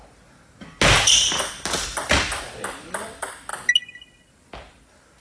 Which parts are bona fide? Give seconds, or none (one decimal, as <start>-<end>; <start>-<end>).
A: 0.0-5.2